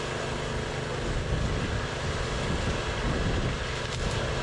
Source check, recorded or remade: recorded